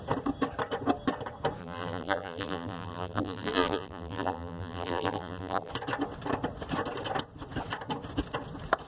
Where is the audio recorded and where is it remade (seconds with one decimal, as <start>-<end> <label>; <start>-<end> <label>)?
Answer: 0.0-1.6 recorded; 1.6-5.7 remade; 5.7-8.9 recorded